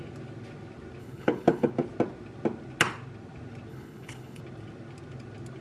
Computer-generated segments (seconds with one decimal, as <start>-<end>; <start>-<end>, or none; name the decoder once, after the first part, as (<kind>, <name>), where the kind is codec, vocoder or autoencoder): 1.0-1.7 (codec, HILCodec); 3.7-4.4